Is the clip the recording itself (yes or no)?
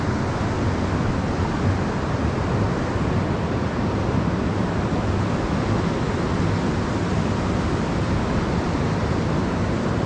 yes